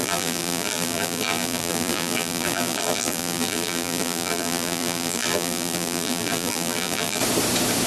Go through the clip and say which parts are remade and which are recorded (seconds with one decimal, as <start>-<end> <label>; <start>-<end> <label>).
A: 0.0-7.2 remade; 7.2-7.9 recorded